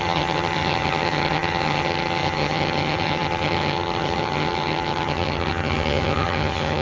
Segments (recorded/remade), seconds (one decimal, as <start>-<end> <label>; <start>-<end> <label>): 0.0-6.8 remade